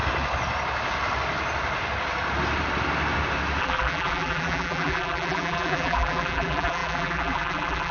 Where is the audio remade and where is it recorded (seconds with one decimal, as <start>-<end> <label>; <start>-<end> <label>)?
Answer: 0.0-3.6 recorded; 3.6-7.9 remade